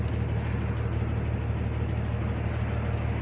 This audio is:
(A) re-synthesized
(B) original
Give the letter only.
B